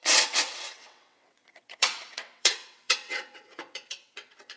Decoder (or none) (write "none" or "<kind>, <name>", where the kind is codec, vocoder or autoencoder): vocoder, WaveNeXt